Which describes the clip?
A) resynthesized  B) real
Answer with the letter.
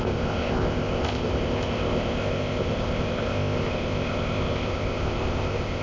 A